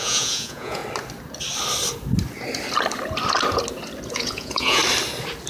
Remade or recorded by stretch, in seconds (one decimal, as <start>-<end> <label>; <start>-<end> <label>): 0.0-0.8 remade; 0.8-4.1 recorded; 4.1-4.8 remade; 4.8-5.5 recorded